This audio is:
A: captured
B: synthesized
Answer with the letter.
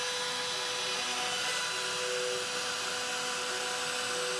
A